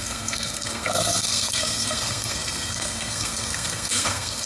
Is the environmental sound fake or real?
fake